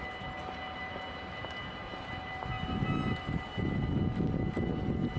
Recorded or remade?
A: recorded